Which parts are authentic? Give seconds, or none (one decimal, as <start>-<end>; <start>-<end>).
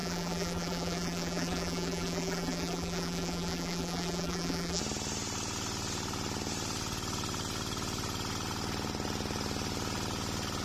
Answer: 4.8-10.6